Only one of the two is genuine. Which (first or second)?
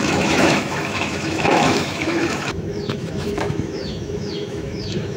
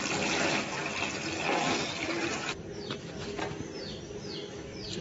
second